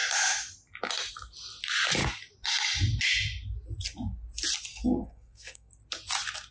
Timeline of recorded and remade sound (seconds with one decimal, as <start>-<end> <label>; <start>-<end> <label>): 0.0-4.7 recorded; 4.7-5.7 remade; 5.7-6.5 recorded